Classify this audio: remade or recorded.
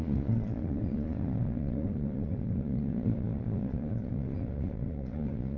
remade